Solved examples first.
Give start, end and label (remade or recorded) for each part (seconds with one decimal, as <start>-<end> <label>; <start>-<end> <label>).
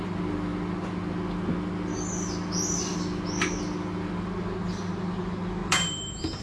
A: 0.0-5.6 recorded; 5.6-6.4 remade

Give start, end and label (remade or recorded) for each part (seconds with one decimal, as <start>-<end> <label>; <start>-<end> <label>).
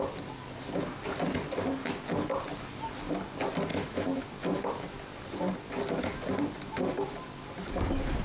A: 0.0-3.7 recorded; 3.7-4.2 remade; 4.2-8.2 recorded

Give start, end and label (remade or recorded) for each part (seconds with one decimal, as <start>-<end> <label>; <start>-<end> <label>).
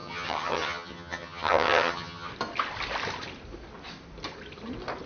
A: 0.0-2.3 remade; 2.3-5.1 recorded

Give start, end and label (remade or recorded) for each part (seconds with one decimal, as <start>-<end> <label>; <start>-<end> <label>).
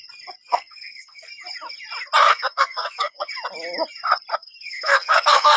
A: 0.0-0.5 recorded; 0.5-1.3 remade; 1.3-2.3 recorded; 2.3-3.3 remade; 3.3-4.3 recorded; 4.3-5.6 remade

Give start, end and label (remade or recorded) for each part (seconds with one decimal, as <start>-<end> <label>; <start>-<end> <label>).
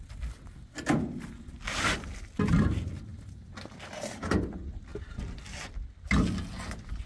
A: 0.0-7.1 recorded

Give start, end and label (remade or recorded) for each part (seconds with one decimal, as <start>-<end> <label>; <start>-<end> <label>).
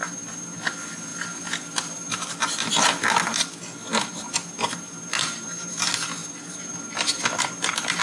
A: 0.0-8.0 recorded